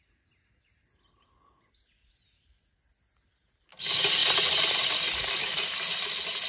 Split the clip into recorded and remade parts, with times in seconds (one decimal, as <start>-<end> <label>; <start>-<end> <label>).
0.0-6.5 recorded